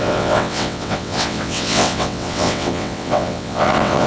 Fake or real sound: fake